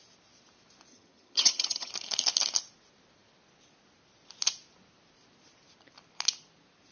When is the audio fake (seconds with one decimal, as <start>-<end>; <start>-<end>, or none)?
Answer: 0.9-1.9